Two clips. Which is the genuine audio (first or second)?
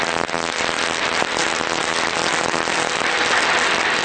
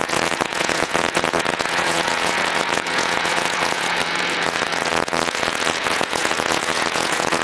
first